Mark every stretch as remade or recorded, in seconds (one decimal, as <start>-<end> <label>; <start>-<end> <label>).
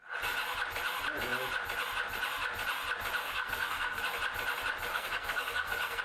0.0-3.2 recorded; 3.2-4.0 remade; 4.0-4.9 recorded; 4.9-6.0 remade